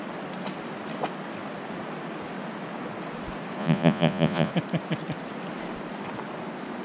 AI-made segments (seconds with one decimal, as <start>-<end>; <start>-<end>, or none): 3.6-4.5